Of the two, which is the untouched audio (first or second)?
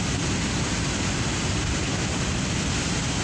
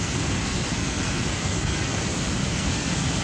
first